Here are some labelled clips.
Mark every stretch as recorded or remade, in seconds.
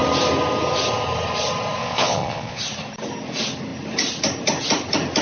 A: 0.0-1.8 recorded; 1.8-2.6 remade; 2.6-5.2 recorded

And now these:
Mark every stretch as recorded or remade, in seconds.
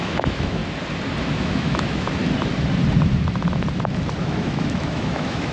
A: 0.0-0.6 remade; 0.6-1.3 recorded; 1.3-2.2 remade; 2.2-4.2 recorded; 4.2-5.5 remade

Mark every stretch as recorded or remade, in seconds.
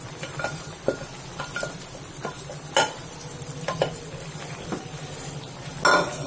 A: 0.0-5.7 remade; 5.7-6.3 recorded